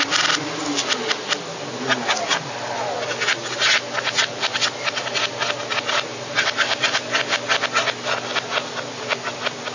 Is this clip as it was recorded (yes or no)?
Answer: yes